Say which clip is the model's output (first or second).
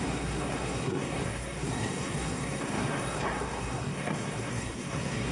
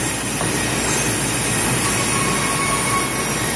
first